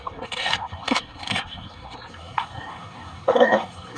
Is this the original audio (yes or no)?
no